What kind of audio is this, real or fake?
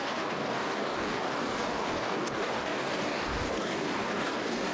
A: fake